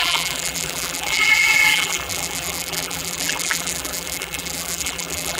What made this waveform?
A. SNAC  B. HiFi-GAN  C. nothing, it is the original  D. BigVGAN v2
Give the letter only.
D